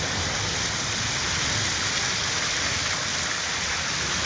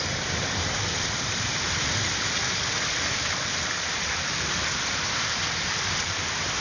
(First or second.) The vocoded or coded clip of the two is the second